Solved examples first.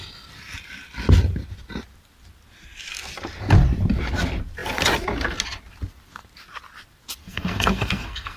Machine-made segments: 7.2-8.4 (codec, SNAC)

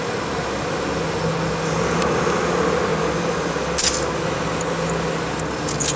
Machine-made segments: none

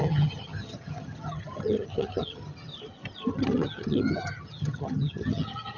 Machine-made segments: 0.0-2.7 (vocoder, HiFi-GAN); 3.3-5.8